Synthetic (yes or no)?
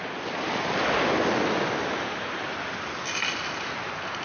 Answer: no